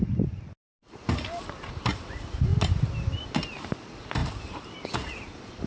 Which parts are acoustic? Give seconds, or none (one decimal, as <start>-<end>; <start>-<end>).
0.0-5.7